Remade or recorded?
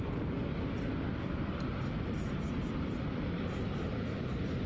recorded